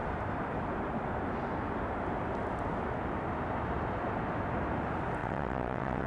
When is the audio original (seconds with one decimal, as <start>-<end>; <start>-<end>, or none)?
0.0-5.2